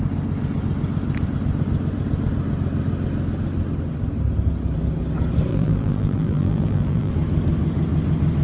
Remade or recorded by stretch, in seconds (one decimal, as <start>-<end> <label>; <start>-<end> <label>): 0.0-5.5 recorded; 5.5-7.1 remade; 7.1-8.4 recorded